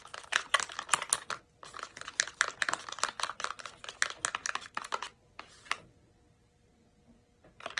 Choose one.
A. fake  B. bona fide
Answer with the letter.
B